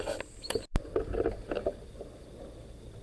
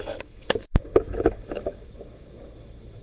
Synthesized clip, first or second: second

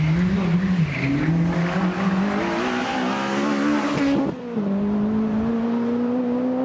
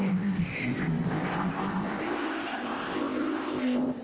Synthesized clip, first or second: second